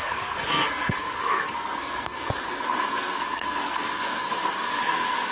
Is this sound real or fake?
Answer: fake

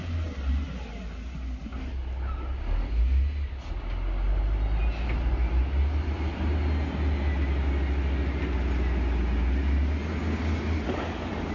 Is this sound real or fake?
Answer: real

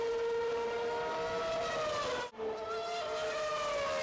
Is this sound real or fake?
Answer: real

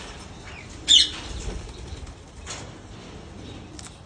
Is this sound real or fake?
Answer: real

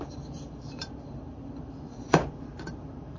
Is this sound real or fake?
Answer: fake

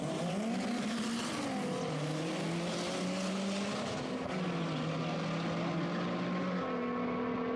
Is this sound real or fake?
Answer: real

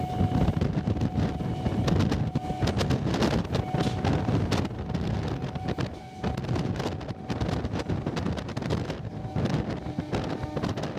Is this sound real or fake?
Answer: real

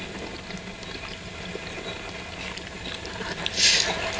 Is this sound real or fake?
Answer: real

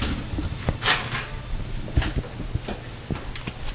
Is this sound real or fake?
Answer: real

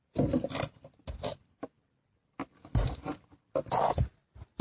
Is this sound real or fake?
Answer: real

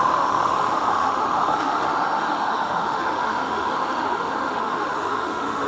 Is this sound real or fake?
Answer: fake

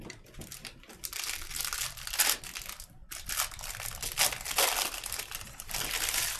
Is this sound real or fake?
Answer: real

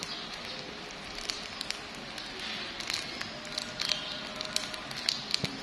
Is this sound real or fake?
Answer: real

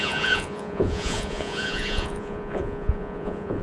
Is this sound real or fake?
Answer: fake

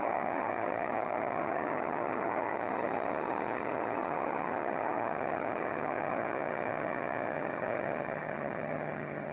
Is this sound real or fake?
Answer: fake